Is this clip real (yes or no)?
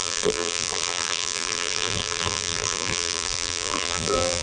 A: no